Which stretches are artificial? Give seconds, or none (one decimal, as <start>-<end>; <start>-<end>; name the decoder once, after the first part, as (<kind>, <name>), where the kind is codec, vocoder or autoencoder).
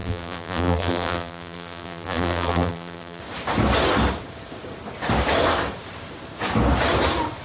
0.0-3.2 (vocoder, BigVGAN v2)